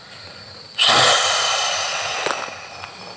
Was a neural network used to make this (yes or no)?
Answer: no